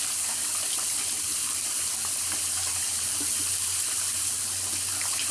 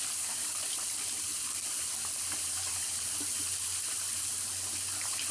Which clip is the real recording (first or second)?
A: first